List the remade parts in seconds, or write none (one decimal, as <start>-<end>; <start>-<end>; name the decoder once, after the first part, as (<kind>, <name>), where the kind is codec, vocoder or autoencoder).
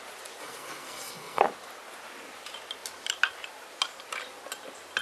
0.4-1.4 (codec, SNAC)